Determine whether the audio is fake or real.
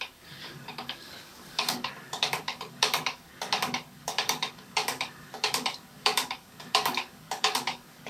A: fake